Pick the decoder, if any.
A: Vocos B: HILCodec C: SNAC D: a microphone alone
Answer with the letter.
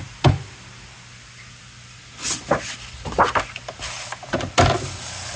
D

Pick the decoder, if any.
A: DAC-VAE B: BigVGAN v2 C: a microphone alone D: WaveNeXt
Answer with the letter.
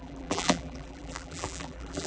B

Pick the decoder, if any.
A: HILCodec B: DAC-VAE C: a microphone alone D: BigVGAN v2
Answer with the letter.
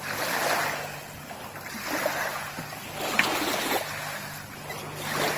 C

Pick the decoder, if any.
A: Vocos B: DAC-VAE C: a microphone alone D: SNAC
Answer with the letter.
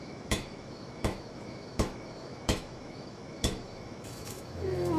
B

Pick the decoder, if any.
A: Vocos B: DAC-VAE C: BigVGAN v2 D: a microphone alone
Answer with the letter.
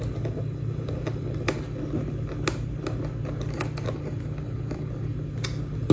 D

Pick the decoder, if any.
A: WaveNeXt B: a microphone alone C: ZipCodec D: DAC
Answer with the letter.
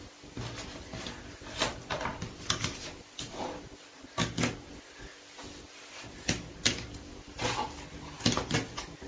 B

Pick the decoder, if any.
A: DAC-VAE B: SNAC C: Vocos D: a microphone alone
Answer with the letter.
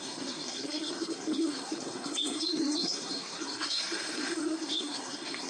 B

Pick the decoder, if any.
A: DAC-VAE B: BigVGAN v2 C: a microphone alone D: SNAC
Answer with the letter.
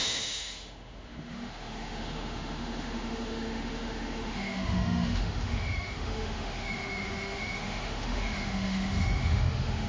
A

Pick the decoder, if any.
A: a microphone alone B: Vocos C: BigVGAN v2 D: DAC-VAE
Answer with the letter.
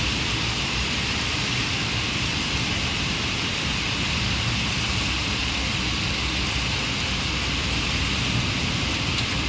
C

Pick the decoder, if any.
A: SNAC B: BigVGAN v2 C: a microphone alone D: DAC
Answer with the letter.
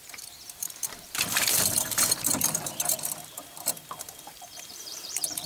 B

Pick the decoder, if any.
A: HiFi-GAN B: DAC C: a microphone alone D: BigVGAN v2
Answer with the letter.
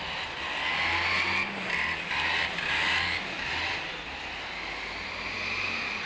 C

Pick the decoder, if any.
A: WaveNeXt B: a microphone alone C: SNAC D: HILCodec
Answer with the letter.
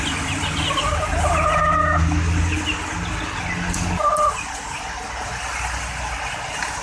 B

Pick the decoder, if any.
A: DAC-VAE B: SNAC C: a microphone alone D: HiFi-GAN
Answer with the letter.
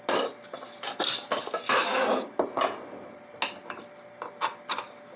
C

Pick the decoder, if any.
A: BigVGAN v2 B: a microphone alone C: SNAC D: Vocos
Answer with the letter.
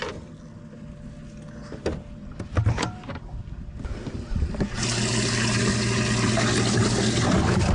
B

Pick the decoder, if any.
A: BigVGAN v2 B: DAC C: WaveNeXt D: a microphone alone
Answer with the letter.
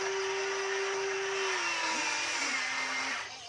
D